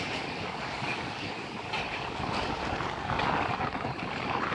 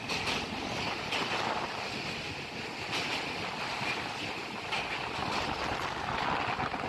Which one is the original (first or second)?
second